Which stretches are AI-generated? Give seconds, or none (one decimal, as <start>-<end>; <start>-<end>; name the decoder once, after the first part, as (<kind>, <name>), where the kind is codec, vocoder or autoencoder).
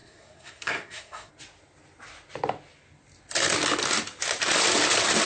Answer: 0.0-1.3 (codec, SNAC)